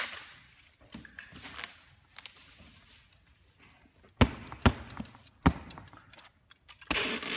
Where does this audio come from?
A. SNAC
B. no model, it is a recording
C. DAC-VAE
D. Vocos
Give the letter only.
B